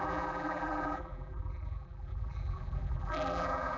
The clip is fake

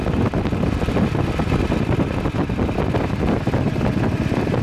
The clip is real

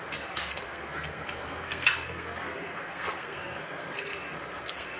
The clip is fake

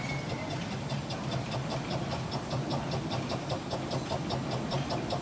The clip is real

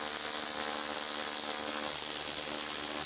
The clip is real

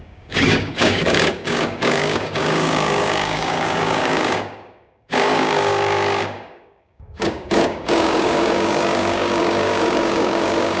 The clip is fake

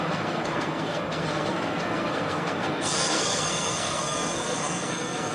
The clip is fake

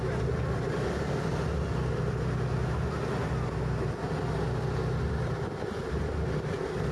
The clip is real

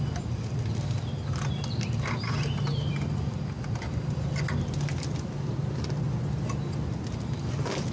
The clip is real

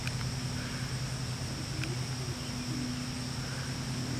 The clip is real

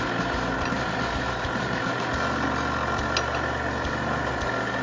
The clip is real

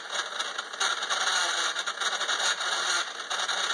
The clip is real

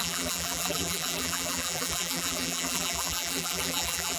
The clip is fake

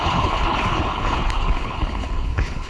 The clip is fake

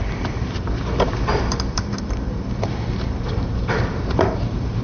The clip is fake